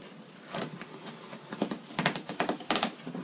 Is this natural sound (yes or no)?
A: yes